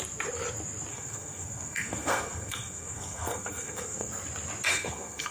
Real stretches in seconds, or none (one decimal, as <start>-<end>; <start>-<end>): 0.0-0.9; 4.1-4.7